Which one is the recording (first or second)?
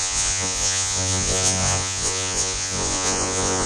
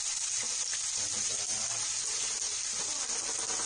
second